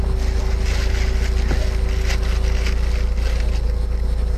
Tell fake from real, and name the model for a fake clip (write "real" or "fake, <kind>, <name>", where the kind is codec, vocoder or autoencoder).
real